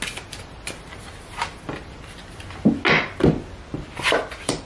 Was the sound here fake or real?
real